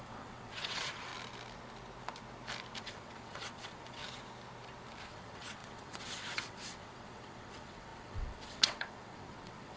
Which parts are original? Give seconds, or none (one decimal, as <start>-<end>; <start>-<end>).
1.1-2.8; 4.0-5.0